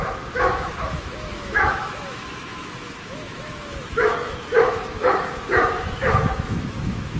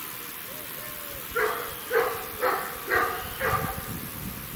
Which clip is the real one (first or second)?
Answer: second